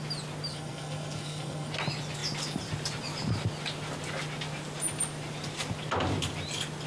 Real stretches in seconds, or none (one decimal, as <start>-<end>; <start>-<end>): 0.0-0.5; 1.7-6.9